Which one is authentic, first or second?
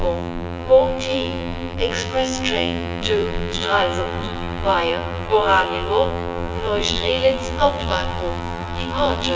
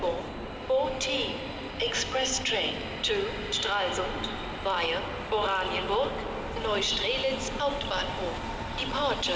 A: second